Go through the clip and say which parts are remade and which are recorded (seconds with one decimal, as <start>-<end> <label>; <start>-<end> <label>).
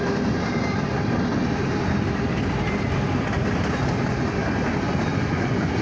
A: 0.0-5.8 recorded